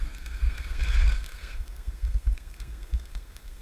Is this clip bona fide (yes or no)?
no